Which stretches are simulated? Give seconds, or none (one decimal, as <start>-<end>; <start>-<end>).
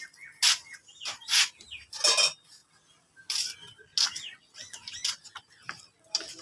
none